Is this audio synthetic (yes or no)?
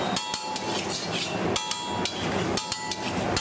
no